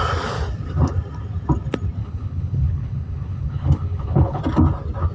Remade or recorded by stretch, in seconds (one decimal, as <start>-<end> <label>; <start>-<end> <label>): 0.0-2.0 recorded; 2.0-4.4 remade; 4.4-5.1 recorded